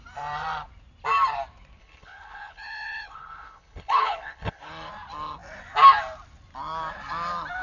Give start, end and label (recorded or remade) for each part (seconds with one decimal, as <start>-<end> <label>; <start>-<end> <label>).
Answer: 0.0-1.8 recorded; 1.8-4.7 remade; 4.7-7.6 recorded